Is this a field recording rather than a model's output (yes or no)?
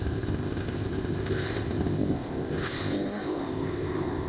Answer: no